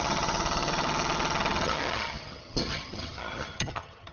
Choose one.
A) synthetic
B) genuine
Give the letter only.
A